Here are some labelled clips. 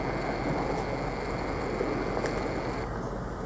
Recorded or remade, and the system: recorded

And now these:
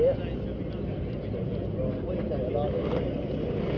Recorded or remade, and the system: recorded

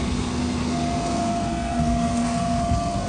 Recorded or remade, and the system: remade, codec, SNAC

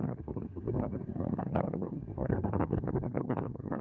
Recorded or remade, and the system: remade, codec, SNAC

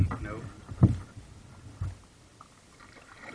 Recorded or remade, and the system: recorded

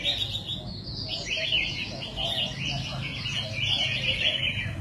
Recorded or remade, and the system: recorded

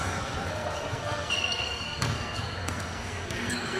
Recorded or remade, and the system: remade, codec, SNAC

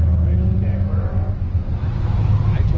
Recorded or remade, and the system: recorded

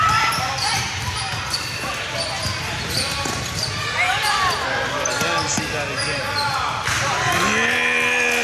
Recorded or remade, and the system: recorded